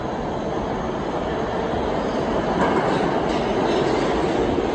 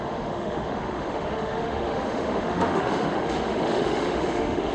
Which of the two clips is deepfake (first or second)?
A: second